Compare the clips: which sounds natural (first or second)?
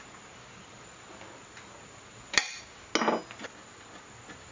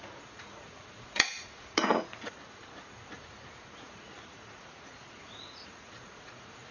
first